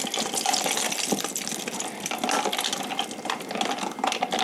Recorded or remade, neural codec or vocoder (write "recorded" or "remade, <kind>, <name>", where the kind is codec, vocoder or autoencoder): recorded